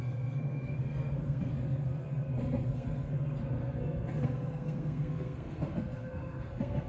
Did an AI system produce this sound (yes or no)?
yes